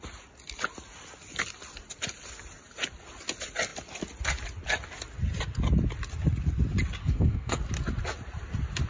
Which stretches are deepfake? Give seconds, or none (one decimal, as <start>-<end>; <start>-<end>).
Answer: 7.0-7.6